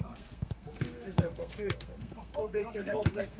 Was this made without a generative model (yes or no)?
no